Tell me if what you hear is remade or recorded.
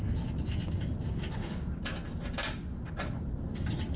recorded